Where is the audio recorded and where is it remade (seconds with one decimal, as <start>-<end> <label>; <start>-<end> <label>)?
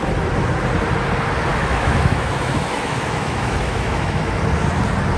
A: 0.0-1.5 recorded; 1.5-4.4 remade; 4.4-5.2 recorded